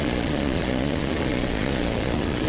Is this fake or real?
fake